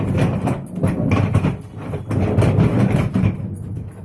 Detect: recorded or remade recorded